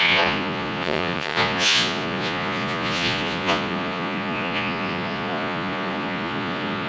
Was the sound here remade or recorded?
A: remade